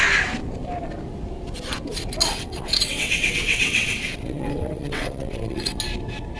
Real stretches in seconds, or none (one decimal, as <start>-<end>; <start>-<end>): 0.0-2.2; 5.8-6.4